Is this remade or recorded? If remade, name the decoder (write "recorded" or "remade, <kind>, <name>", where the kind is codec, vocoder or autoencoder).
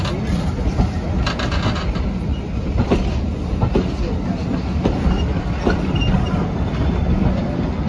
recorded